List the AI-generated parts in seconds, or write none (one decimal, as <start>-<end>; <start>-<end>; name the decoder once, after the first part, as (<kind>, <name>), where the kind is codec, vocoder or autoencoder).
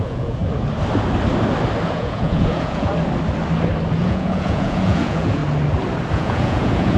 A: 0.0-0.4 (vocoder, Vocos); 1.9-2.9; 4.0-5.4; 6.1-7.0